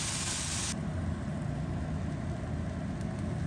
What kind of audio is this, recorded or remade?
recorded